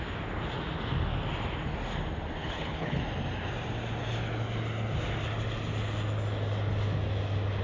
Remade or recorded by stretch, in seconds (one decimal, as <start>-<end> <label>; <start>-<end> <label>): 0.0-2.4 recorded; 2.4-3.0 remade; 3.0-7.6 recorded